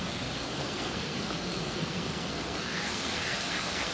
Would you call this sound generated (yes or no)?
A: yes